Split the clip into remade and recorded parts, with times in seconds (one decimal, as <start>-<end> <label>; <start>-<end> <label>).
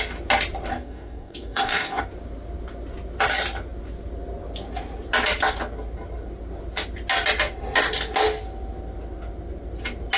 0.0-0.7 recorded; 0.7-2.0 remade; 2.0-10.2 recorded